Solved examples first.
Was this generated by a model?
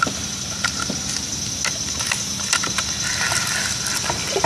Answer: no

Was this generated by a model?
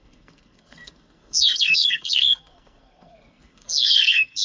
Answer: yes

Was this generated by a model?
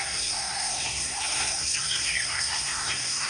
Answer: yes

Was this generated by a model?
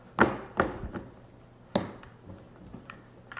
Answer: no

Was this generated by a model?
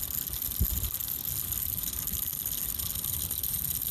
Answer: no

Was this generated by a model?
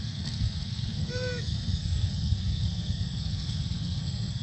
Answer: yes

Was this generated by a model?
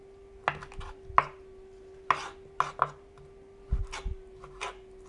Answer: no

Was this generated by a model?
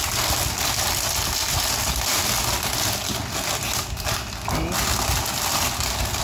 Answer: no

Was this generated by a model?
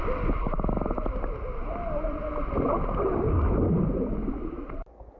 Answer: no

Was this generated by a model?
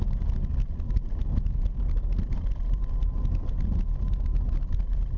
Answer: no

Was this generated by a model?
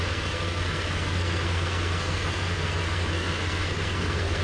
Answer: yes